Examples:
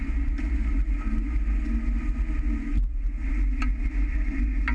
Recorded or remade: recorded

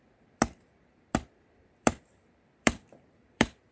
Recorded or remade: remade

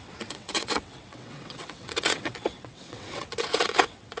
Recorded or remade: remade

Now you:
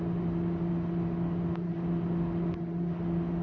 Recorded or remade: recorded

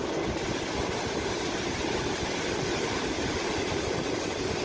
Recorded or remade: recorded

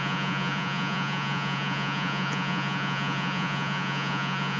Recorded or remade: remade